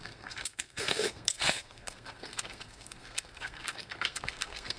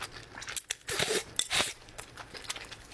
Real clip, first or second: second